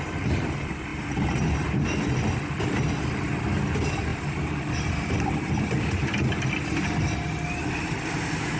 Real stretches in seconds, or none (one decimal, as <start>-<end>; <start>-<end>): 0.0-8.6